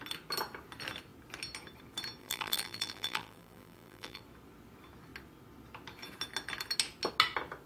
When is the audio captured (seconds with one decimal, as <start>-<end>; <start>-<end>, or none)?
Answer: 0.0-2.2; 4.2-7.7